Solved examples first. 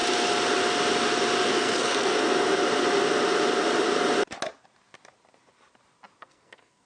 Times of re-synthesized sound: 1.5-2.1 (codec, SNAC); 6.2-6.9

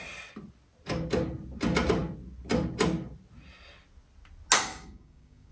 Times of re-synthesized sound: 4.7-5.5 (codec, DAC)

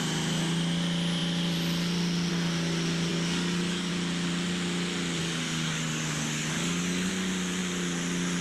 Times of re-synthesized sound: 3.1-3.9 (codec, DAC); 5.2-7.1

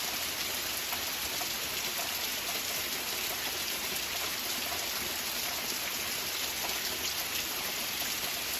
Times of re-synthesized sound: none

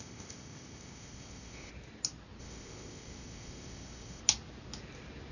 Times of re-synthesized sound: 0.0-1.7 (codec, ZipCodec); 2.4-4.2